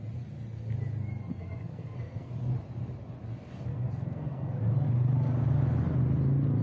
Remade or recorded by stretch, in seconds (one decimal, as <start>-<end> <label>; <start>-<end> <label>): 0.0-1.3 recorded; 1.3-2.3 remade; 2.3-3.7 recorded; 3.7-4.6 remade; 4.6-6.6 recorded